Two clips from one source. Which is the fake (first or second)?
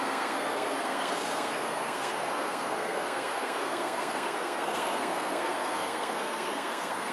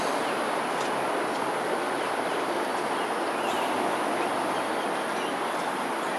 first